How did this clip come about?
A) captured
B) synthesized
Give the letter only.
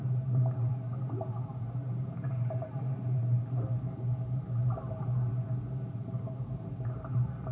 B